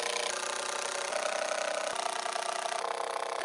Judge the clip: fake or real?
real